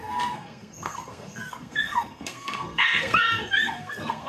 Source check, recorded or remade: remade